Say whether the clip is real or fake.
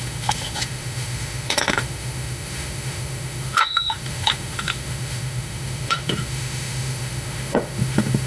fake